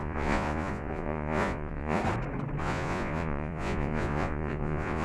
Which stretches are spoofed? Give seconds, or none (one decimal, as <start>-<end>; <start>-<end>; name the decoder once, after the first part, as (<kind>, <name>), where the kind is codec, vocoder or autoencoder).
0.0-2.0 (vocoder, Vocos); 2.6-5.0